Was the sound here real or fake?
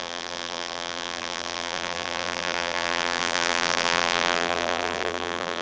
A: fake